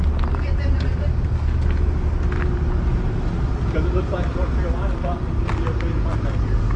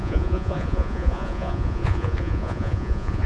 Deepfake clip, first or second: second